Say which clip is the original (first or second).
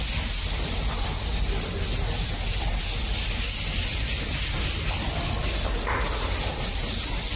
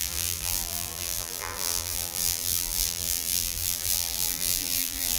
first